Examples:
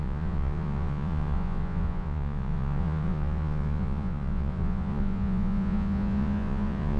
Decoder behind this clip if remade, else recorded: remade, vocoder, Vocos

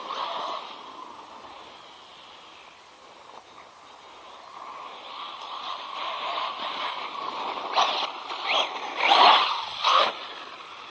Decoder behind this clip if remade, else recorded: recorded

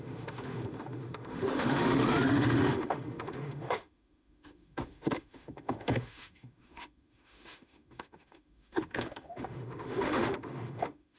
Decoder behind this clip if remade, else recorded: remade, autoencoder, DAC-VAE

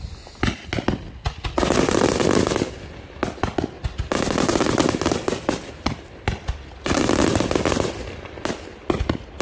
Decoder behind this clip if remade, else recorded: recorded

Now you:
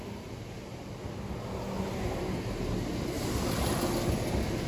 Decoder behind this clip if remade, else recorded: recorded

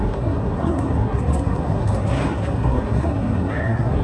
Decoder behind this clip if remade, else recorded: remade, codec, SNAC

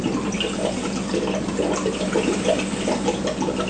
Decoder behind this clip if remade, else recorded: recorded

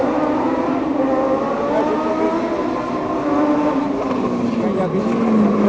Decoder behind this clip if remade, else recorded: recorded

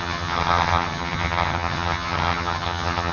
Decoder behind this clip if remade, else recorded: remade, vocoder, HiFi-GAN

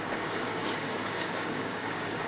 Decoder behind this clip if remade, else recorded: remade, codec, DAC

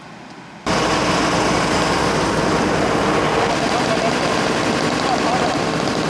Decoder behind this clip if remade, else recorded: recorded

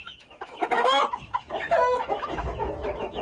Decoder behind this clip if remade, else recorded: remade, autoencoder, DAC-VAE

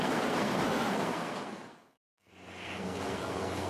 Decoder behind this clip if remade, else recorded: remade, codec, SNAC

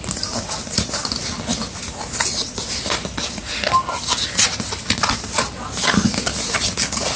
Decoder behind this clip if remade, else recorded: recorded